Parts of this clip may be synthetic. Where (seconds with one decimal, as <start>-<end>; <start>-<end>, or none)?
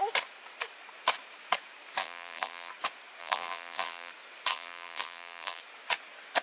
2.0-2.7; 3.2-4.1; 4.5-5.6